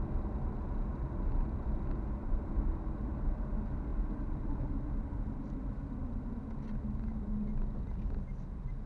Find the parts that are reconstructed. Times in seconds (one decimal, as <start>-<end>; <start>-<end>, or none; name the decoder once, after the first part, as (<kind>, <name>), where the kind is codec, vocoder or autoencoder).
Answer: 0.9-2.8 (vocoder, BigVGAN v2); 3.9-6.4